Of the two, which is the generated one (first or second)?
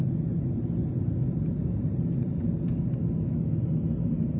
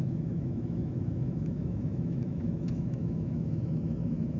second